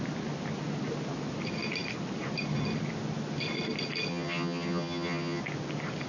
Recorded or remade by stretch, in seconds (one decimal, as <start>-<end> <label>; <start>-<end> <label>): 0.0-4.1 recorded; 4.1-5.4 remade; 5.4-6.1 recorded